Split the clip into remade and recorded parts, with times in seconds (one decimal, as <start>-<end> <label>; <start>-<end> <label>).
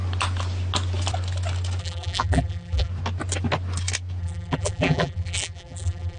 0.0-1.8 recorded; 1.8-2.9 remade; 2.9-4.2 recorded; 4.2-6.2 remade